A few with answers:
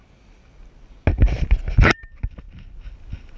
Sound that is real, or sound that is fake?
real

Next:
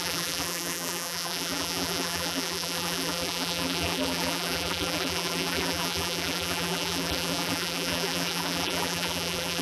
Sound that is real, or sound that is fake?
fake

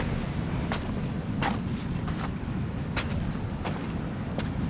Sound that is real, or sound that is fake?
real